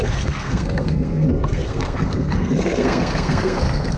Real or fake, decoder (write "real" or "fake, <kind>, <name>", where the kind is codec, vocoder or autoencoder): fake, codec, SNAC